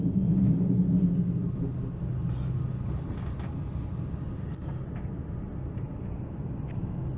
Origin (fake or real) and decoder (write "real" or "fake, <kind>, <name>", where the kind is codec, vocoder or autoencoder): real